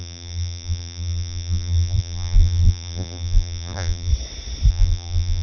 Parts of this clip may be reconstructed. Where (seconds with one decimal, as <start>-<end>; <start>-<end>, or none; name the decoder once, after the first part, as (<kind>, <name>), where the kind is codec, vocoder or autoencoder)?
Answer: 0.0-4.1 (vocoder, BigVGAN v2); 4.7-5.4